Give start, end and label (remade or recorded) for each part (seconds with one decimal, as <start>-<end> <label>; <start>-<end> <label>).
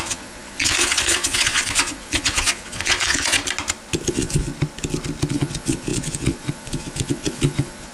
0.0-3.4 remade; 3.4-4.1 recorded; 4.1-4.5 remade; 4.5-5.3 recorded; 5.3-7.9 remade